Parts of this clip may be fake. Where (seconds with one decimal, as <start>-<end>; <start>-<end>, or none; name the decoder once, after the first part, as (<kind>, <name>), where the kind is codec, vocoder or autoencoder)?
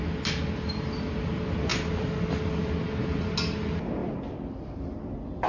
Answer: none